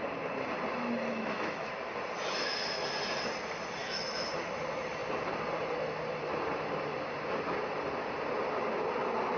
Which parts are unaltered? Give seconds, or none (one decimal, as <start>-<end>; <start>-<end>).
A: 0.0-1.1; 1.7-3.8; 4.3-9.4